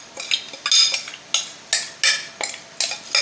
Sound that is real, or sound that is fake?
real